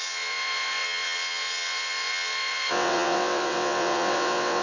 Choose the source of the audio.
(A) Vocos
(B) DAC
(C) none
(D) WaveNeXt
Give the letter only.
D